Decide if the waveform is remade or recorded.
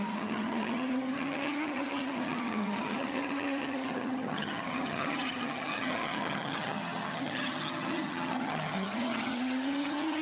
remade